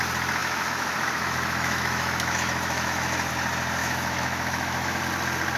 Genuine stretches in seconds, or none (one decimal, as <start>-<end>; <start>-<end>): 0.0-0.4; 3.3-3.8; 5.0-5.6